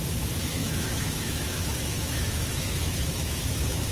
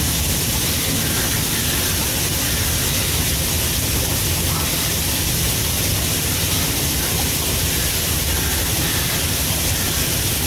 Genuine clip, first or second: second